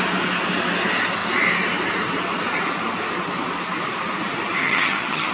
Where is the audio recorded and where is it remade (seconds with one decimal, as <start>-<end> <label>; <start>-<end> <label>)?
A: 0.0-4.6 recorded; 4.6-5.3 remade